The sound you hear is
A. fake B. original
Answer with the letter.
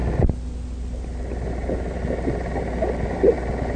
B